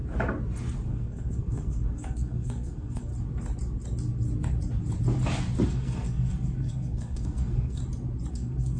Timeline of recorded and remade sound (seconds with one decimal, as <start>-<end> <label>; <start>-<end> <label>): 0.0-0.9 recorded; 0.9-3.1 remade; 3.1-5.7 recorded; 5.7-7.8 remade; 7.8-8.3 recorded; 8.3-8.8 remade